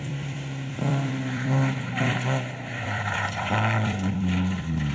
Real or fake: fake